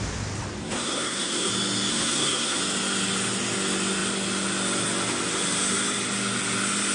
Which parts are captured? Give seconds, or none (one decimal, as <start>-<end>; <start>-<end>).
0.0-0.6; 1.5-1.9; 2.6-6.9